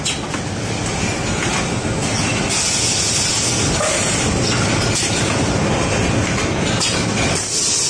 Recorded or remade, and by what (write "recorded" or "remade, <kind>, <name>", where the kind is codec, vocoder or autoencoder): recorded